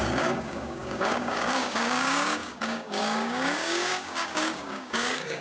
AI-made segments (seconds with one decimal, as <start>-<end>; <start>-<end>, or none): 0.0-5.4